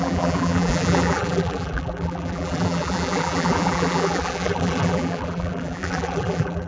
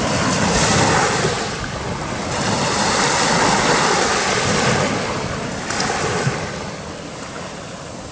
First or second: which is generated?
first